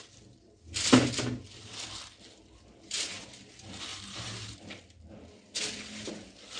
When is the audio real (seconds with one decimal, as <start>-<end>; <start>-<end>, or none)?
0.0-0.9; 1.4-3.9; 4.5-6.6